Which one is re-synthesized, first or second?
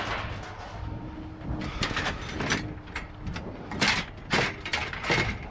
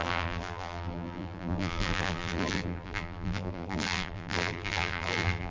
second